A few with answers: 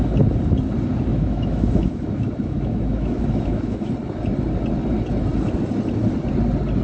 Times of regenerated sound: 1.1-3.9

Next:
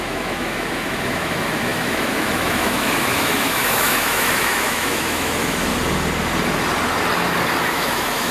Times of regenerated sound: 0.0-5.7; 7.7-8.3